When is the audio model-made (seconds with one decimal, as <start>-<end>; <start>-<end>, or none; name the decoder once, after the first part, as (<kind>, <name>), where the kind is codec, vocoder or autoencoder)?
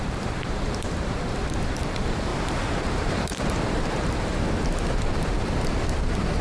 0.0-2.3 (vocoder, BigVGAN v2); 2.8-4.3; 5.0-6.4